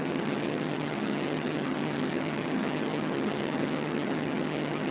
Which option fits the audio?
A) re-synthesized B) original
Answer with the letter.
A